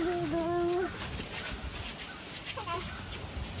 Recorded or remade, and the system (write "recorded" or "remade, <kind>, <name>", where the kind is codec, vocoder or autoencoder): recorded